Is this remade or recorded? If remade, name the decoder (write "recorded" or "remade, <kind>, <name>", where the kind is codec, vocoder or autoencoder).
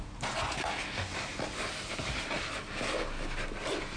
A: recorded